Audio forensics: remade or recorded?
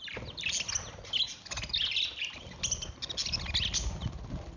recorded